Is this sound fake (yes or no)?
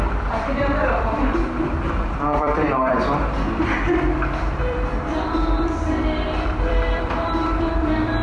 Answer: yes